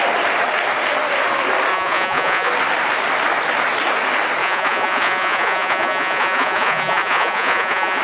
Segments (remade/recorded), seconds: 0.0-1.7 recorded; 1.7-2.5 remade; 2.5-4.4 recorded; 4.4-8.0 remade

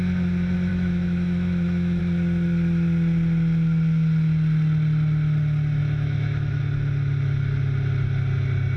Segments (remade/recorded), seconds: 0.0-0.7 recorded; 0.7-2.0 remade; 2.0-5.8 recorded; 5.8-6.6 remade; 6.6-8.8 recorded

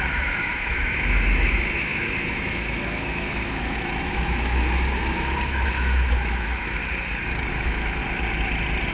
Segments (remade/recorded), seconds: 0.0-6.8 remade; 6.8-7.5 recorded; 7.5-8.0 remade; 8.0-8.9 recorded

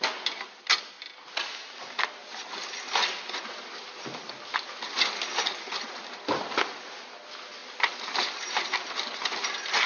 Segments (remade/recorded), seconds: 0.0-9.9 recorded

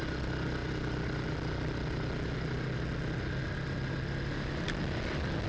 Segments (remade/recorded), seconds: 0.0-5.5 recorded